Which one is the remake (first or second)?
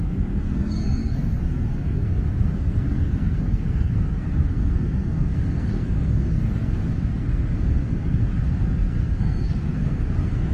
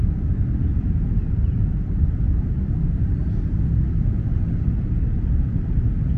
first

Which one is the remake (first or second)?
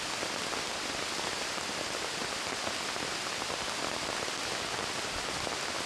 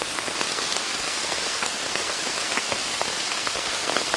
second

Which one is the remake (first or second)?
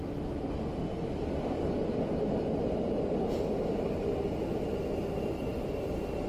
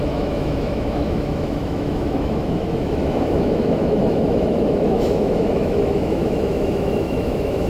second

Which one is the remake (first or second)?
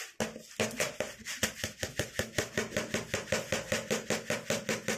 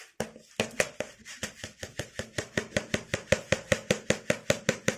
second